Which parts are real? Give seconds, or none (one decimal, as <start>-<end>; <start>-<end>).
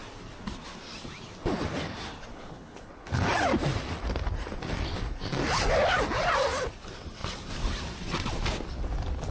0.0-2.3; 3.2-9.3